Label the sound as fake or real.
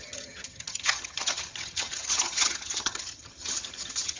fake